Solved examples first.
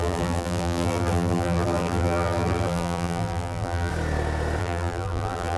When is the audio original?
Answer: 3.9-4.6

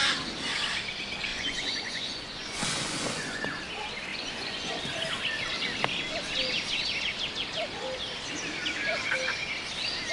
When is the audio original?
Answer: 0.0-1.3; 3.6-4.1; 4.8-10.1

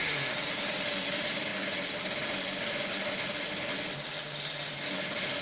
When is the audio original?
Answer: 1.5-4.7

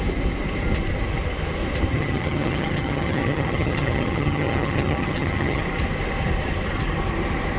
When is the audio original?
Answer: 0.0-1.9; 5.6-7.6

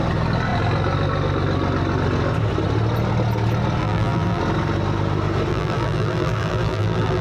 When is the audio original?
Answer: 0.0-3.8; 4.4-5.5

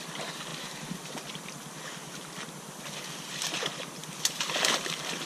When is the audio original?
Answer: 0.5-3.3; 4.0-5.3

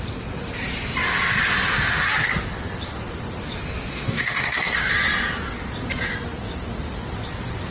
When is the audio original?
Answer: 0.0-3.9; 4.9-7.7